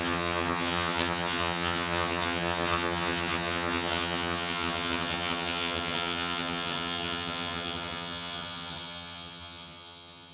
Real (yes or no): no